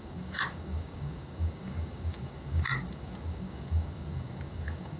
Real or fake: fake